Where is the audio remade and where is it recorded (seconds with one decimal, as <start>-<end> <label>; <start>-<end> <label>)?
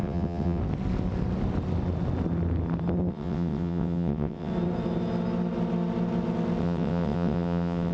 0.0-0.6 remade; 0.6-3.1 recorded; 3.1-4.5 remade; 4.5-6.6 recorded; 6.6-7.9 remade